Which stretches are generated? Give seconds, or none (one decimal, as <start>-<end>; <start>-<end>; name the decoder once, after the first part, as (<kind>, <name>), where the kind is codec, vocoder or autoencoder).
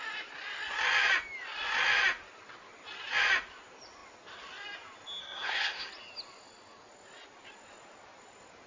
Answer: 5.2-5.9 (codec, SNAC)